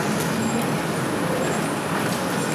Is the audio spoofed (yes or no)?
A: no